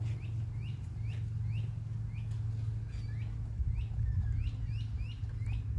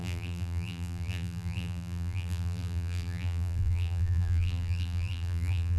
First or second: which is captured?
first